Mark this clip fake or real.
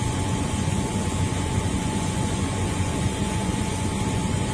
fake